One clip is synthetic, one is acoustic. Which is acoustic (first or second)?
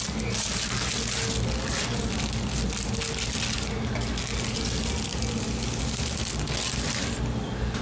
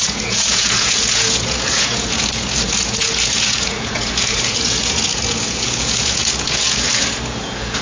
first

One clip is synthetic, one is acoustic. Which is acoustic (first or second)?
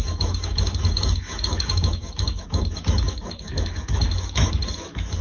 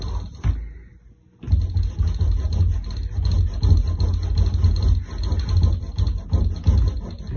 second